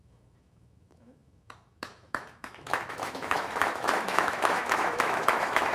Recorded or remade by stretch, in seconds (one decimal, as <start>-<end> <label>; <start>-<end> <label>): 0.0-5.7 remade